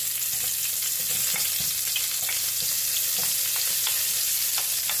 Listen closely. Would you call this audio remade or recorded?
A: recorded